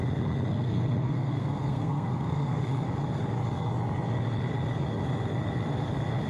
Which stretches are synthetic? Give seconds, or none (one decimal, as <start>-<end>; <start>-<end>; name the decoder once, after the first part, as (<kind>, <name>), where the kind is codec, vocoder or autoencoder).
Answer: 0.5-2.6 (codec, SNAC)

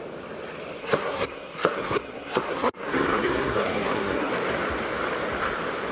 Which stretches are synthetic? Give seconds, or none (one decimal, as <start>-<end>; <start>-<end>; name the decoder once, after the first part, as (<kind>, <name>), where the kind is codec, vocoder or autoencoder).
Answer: 0.8-4.3 (codec, SNAC)

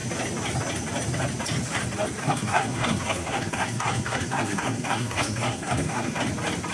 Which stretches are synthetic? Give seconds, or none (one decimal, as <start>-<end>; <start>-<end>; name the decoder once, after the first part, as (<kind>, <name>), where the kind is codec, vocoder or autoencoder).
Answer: 2.2-6.2 (codec, SNAC)

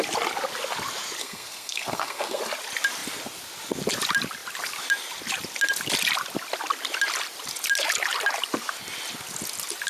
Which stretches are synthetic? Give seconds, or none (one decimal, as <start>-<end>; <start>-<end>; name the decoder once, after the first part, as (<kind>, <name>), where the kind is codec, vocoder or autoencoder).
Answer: 1.2-2.4 (codec, SNAC)

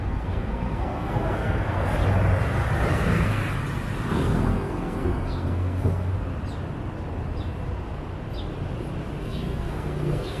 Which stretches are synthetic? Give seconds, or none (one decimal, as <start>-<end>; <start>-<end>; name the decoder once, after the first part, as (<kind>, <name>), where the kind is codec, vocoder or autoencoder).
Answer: 0.0-2.0 (codec, SNAC); 2.9-3.4; 4.1-6.1; 9.2-10.4

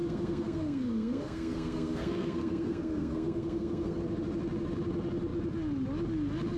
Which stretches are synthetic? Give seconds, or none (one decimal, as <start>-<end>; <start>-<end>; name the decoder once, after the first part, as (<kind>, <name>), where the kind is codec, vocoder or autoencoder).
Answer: 0.0-4.0 (codec, SNAC)